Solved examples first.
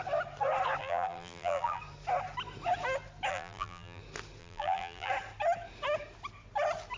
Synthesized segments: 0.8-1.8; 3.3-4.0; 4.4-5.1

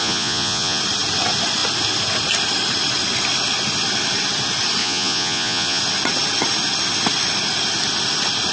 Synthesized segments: 0.0-0.8; 4.8-5.8

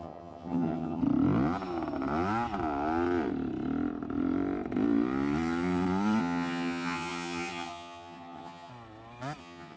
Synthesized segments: 0.0-1.0; 6.2-8.7; 9.4-9.8

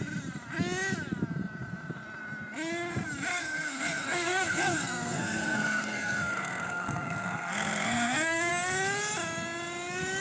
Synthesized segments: 3.3-8.5

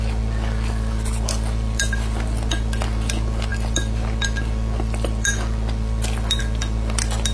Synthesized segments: none

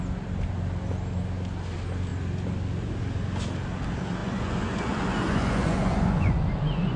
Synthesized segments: 4.2-7.0

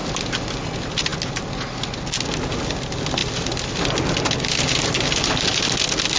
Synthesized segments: none

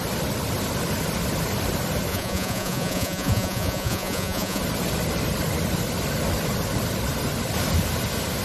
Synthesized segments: 2.1-4.6